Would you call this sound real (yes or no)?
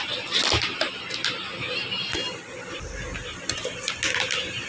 yes